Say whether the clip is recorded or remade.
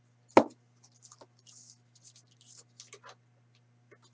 recorded